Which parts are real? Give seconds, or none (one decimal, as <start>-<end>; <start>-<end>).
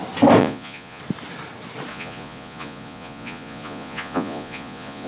0.0-0.4; 1.0-1.9